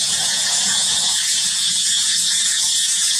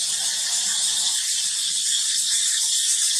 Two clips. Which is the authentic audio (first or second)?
second